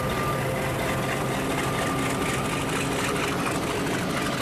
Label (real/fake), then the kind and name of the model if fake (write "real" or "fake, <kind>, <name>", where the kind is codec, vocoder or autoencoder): real